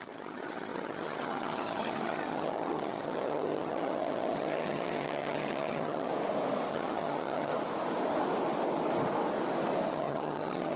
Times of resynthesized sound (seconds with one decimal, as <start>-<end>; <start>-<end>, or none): 0.0-6.1; 6.7-7.5; 9.9-10.8